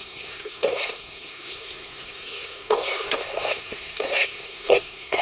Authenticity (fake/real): fake